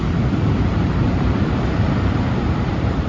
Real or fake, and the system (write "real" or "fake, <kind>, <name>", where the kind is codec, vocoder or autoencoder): fake, vocoder, BigVGAN v2